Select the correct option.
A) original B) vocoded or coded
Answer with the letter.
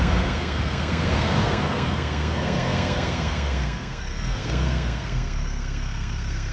B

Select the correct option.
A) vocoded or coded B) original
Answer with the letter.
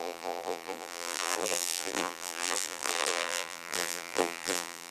A